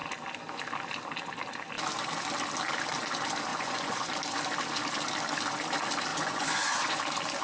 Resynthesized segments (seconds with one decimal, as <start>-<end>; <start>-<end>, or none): 3.5-4.1; 6.1-7.0

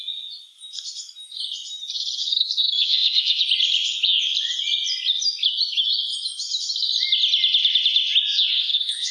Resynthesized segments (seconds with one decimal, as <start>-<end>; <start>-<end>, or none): 2.2-3.4; 8.5-9.1

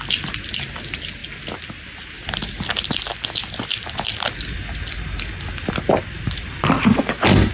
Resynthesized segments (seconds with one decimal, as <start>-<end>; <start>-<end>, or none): none

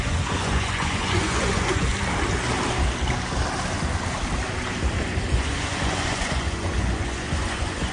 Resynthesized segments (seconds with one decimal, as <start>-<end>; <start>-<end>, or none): 0.0-1.9; 5.3-7.9